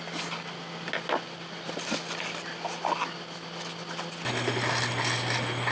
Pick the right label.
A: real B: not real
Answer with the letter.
A